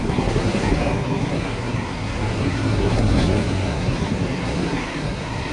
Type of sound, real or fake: fake